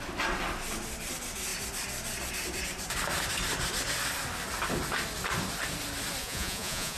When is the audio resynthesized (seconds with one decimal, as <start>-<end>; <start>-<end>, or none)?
6.2-7.0